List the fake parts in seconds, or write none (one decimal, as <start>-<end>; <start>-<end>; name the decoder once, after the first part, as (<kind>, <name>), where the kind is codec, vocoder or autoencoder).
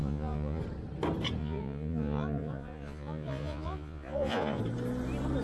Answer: 0.0-0.6 (vocoder, Vocos); 1.4-4.6